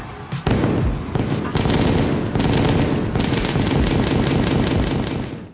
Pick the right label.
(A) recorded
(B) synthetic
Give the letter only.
A